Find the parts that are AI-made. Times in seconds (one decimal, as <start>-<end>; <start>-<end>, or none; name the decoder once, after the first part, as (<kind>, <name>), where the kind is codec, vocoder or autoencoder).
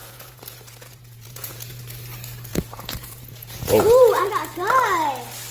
0.0-1.8 (vocoder, Vocos); 2.5-4.3